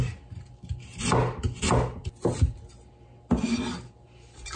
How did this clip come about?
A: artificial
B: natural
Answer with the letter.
B